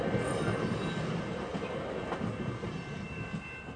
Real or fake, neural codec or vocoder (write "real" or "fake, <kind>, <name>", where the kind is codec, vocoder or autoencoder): real